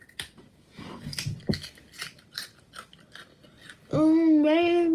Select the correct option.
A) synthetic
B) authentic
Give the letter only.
B